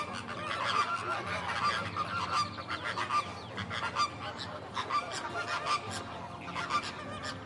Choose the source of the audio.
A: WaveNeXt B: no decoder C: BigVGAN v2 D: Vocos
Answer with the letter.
B